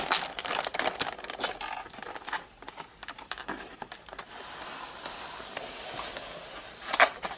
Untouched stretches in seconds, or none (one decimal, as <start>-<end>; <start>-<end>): 0.0-7.4